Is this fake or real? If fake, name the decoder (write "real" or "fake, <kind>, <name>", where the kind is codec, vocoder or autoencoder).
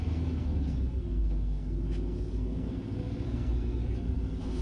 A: fake, codec, SNAC